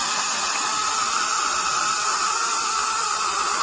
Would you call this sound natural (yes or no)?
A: yes